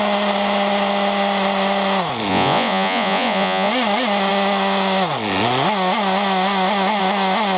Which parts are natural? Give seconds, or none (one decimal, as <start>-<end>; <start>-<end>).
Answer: 0.0-2.3; 3.7-7.6